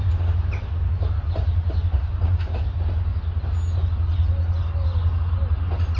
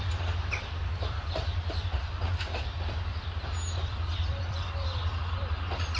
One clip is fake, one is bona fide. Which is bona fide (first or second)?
first